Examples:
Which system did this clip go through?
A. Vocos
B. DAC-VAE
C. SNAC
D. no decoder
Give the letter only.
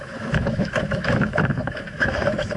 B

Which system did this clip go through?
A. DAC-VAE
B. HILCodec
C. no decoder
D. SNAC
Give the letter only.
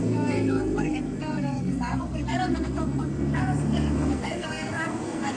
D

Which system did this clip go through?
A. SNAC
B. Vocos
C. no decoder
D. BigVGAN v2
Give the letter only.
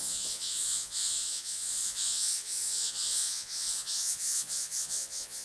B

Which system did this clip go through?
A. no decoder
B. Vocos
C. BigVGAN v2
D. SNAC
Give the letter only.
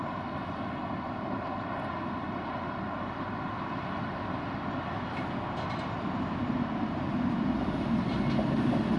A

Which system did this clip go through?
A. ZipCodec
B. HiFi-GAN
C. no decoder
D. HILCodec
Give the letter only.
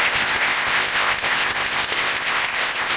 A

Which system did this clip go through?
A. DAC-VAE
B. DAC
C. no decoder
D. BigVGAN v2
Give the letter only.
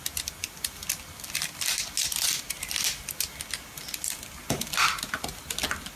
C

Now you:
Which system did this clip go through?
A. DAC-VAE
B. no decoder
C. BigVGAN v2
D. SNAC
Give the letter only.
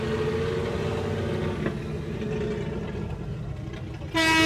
B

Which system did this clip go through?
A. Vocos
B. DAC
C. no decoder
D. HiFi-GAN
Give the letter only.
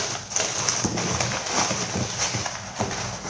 C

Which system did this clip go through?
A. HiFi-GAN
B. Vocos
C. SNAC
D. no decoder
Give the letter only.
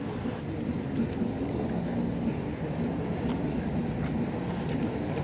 D